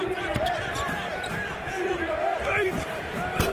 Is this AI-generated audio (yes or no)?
yes